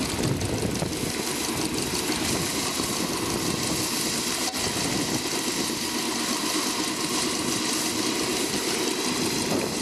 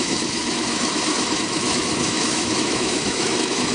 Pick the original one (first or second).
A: first